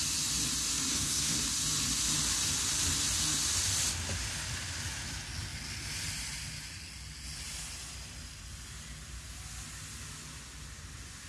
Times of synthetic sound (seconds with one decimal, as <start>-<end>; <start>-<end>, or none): 0.9-1.4